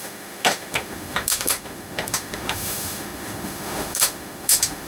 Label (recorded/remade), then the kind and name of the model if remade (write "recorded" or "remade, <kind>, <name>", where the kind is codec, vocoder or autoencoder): remade, autoencoder, DAC-VAE